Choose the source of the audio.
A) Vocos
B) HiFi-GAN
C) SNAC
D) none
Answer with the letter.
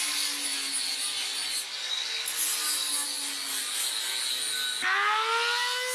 D